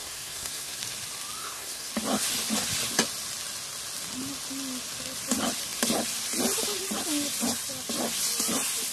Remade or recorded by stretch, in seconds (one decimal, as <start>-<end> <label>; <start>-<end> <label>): 0.0-0.8 remade; 0.8-1.4 recorded; 1.4-1.9 remade; 1.9-8.9 recorded